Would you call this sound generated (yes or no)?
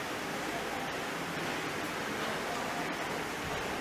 no